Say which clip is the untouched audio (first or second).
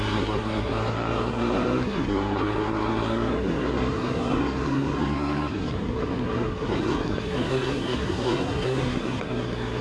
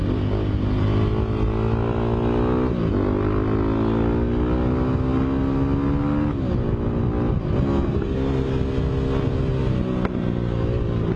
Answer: second